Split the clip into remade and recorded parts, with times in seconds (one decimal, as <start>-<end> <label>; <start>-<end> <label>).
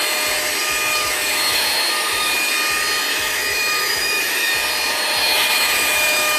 0.0-0.9 recorded; 0.9-2.5 remade; 2.5-3.1 recorded; 3.1-4.5 remade; 4.5-5.2 recorded; 5.2-6.4 remade